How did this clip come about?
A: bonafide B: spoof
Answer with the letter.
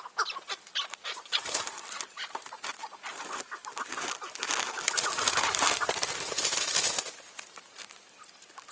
A